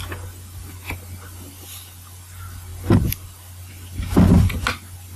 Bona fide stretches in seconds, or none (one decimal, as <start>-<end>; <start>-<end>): 0.0-5.2